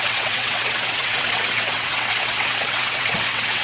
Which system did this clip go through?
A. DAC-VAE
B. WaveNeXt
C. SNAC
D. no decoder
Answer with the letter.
B